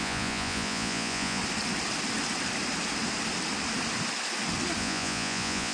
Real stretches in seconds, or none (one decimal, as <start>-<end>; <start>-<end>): 1.4-4.8